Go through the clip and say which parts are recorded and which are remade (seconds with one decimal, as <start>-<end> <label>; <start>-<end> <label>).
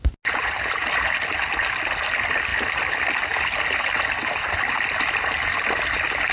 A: 0.0-6.3 recorded